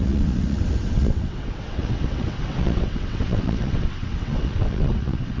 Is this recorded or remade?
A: remade